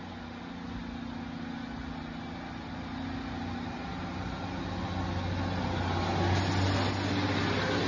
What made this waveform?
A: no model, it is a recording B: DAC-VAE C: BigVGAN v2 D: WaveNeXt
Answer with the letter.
A